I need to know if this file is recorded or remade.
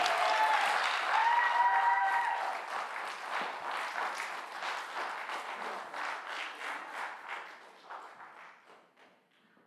recorded